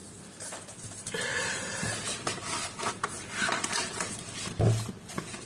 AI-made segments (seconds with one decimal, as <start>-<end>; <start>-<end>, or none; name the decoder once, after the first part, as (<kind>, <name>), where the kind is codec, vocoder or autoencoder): none